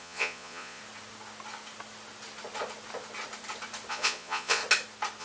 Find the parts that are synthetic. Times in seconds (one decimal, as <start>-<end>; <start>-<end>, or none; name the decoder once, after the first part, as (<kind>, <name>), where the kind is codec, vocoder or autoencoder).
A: 0.0-0.8 (vocoder, Vocos); 3.9-4.6

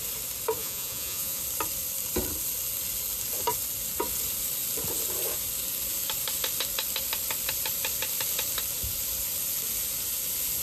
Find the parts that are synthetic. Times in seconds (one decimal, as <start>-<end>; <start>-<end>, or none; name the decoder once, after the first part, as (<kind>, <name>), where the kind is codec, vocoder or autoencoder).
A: 0.6-1.4 (vocoder, Vocos)

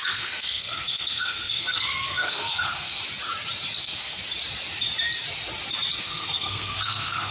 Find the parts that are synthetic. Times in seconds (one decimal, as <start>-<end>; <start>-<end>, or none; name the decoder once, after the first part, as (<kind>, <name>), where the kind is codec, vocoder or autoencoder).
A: 0.0-3.0 (codec, SNAC); 3.8-4.2; 6.0-7.3